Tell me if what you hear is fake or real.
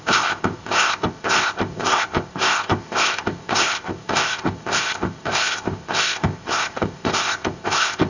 fake